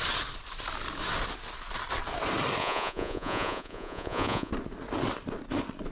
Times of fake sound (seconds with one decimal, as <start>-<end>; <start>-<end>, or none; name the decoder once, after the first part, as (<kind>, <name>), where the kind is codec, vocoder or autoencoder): 2.6-4.5 (vocoder, Vocos)